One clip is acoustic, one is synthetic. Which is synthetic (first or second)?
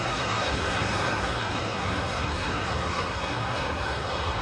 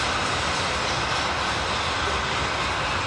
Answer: first